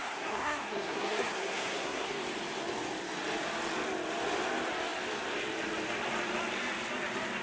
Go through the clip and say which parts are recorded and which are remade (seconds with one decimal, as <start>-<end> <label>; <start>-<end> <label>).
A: 0.0-2.1 remade; 2.1-7.4 recorded